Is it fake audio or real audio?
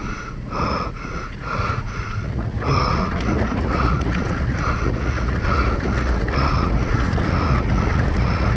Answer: fake